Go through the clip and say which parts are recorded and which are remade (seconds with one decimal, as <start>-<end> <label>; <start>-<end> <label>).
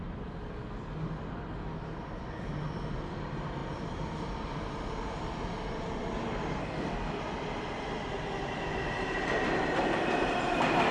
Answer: 0.0-6.6 recorded; 6.6-7.2 remade; 7.2-10.9 recorded